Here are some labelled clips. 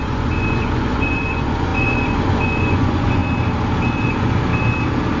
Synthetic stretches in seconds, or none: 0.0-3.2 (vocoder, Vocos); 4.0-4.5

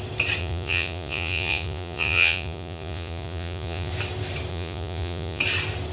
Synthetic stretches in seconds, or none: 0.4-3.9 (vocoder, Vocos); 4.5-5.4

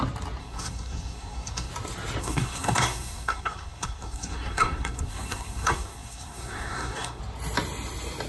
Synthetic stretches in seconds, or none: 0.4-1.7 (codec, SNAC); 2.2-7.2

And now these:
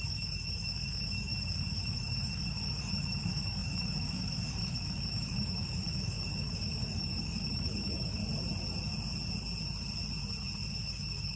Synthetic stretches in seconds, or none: 0.0-8.2 (autoencoder, DAC-VAE); 10.7-11.4